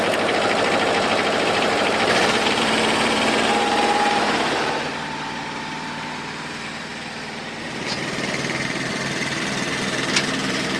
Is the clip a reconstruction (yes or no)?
yes